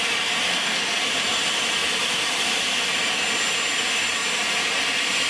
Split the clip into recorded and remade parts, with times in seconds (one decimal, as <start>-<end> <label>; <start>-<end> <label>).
0.0-0.5 recorded; 0.5-1.0 remade; 1.0-5.3 recorded